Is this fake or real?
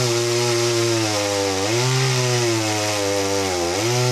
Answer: real